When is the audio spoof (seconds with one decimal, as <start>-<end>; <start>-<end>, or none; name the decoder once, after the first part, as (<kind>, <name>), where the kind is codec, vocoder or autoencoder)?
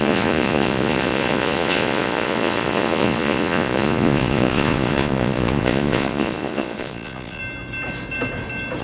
0.0-7.4 (vocoder, Vocos)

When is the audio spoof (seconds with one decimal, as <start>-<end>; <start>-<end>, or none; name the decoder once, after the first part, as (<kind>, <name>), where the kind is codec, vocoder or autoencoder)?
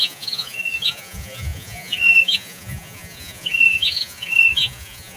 0.0-5.2 (vocoder, Vocos)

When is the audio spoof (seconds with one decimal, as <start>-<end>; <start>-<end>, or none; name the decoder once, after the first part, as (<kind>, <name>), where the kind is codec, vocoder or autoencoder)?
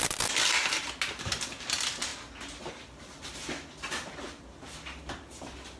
none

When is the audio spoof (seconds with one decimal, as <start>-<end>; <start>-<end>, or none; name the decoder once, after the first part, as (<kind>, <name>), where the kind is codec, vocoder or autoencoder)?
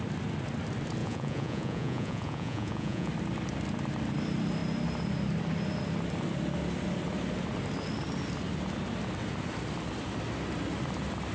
1.0-3.1 (vocoder, Vocos)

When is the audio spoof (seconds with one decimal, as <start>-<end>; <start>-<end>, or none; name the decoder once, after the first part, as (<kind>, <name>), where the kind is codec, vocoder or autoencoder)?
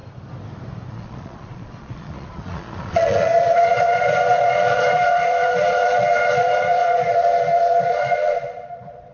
0.9-9.1 (vocoder, Vocos)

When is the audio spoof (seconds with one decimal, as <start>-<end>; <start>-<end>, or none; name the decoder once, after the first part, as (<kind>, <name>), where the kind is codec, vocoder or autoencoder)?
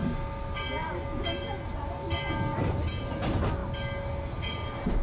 none